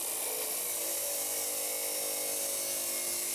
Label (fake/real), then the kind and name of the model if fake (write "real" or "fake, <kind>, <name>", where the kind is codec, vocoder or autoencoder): real